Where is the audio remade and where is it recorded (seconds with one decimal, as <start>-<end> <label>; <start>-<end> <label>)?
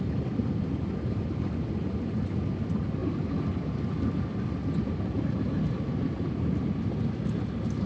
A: 0.0-7.9 recorded